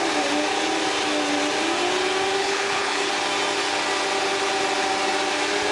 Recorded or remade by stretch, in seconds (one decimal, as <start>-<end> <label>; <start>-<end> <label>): 0.0-2.4 recorded; 2.4-3.1 remade; 3.1-5.7 recorded